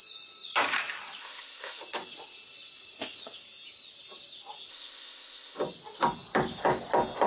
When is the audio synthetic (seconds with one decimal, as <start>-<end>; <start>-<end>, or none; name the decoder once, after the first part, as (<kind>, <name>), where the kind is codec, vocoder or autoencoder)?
1.2-1.8 (codec, ZipCodec); 4.7-5.6

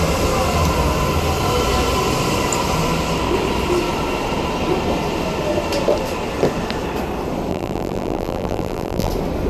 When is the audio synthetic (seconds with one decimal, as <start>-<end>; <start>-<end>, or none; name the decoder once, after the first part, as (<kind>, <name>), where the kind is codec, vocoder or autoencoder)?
7.5-9.1 (vocoder, BigVGAN v2)

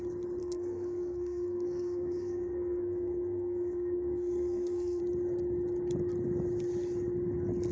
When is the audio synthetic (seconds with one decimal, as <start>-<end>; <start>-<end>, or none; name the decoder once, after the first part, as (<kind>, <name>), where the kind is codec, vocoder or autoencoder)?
0.4-5.0 (codec, SNAC)